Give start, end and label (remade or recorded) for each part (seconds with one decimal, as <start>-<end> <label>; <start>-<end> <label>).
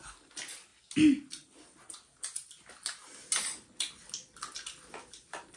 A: 0.0-5.6 recorded